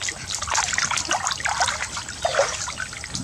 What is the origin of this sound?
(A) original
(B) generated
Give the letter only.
A